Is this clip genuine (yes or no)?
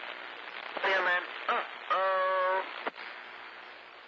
yes